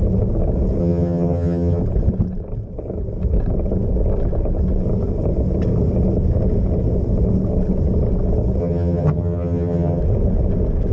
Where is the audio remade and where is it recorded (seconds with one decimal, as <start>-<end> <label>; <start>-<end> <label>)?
0.0-0.8 recorded; 0.8-1.8 remade; 1.8-8.6 recorded; 8.6-10.0 remade; 10.0-10.9 recorded